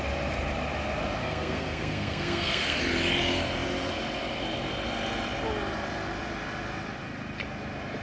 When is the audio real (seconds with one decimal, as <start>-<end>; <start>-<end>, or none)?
0.0-1.2; 2.8-8.0